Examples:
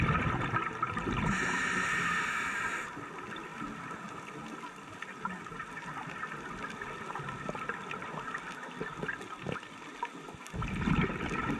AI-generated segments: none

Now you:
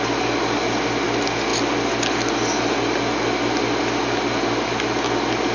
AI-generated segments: none

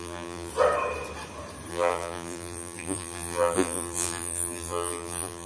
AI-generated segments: 0.0-0.5 (vocoder, BigVGAN v2); 1.7-5.5

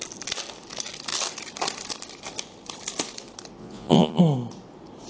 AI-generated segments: 3.6-4.2 (vocoder, Vocos)